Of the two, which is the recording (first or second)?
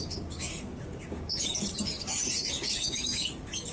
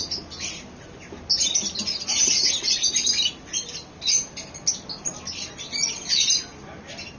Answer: second